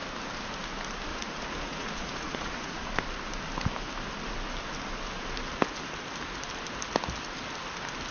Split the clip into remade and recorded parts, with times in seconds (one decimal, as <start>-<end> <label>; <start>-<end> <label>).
0.0-1.1 recorded; 1.1-2.9 remade; 2.9-8.1 recorded